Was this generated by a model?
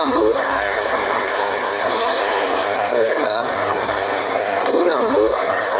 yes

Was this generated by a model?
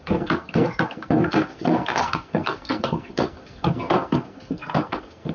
yes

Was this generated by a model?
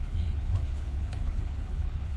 yes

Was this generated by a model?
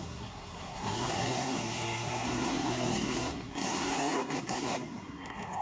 yes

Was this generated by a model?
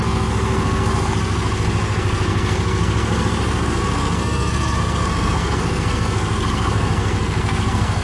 yes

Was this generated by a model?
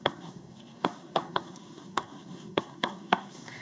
yes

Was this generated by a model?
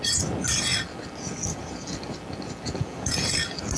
no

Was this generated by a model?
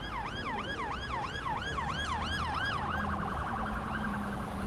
no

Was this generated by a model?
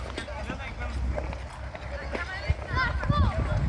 no